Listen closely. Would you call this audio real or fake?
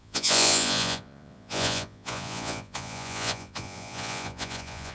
fake